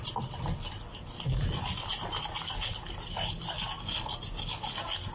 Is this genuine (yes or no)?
yes